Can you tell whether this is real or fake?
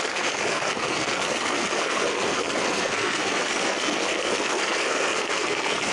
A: fake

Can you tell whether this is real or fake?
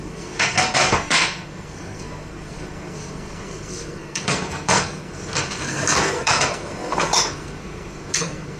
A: fake